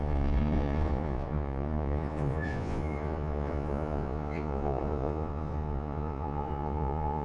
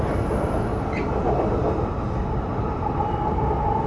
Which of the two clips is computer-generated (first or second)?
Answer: first